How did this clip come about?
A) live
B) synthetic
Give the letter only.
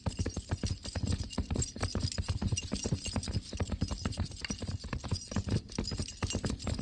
A